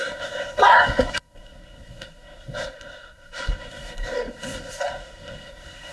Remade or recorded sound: remade